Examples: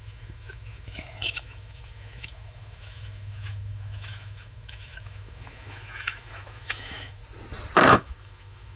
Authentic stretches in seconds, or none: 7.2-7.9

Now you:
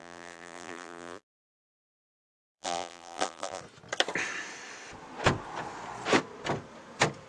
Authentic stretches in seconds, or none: 3.6-7.3